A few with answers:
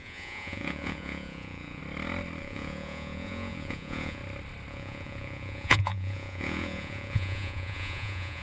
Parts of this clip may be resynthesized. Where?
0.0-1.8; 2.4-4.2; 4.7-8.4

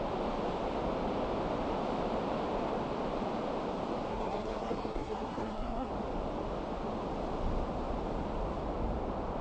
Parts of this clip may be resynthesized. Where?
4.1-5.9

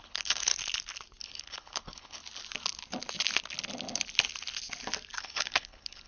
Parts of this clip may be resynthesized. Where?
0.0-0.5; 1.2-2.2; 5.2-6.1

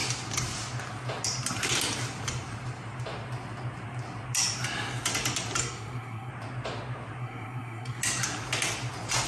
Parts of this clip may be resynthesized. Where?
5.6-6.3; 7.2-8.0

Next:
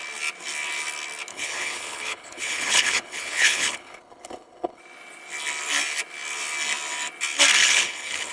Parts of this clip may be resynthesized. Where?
1.3-4.8; 7.6-8.3

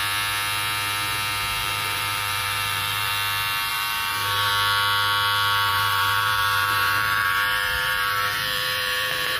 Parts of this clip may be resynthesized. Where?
1.6-3.1; 3.7-4.5; 5.7-9.4